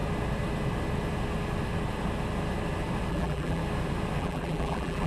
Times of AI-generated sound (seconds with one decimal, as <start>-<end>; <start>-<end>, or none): 3.1-3.6; 4.2-5.1